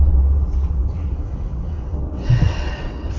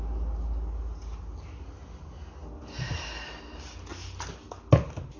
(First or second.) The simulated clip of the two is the first